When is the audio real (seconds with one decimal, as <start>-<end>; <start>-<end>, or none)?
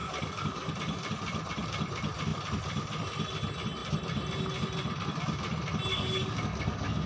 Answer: 0.7-5.9